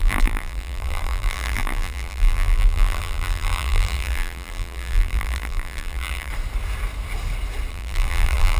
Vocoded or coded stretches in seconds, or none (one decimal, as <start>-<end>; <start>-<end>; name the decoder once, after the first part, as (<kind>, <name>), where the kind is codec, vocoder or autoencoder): 0.0-6.3 (vocoder, BigVGAN v2); 7.7-8.6